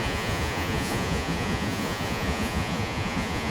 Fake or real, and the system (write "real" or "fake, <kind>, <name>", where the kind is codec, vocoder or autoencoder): fake, vocoder, Vocos